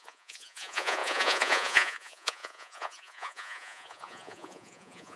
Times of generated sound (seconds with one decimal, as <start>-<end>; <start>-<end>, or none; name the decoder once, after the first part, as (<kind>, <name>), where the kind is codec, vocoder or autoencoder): 0.0-5.2 (vocoder, Vocos)